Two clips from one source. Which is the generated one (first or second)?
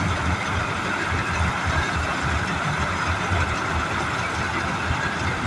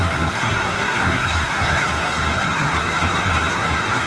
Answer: second